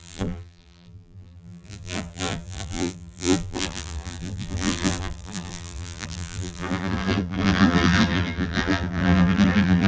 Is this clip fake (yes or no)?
yes